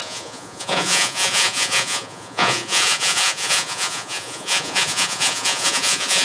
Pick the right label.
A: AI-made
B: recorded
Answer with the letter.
A